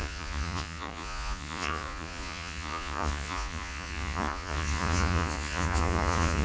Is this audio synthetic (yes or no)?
yes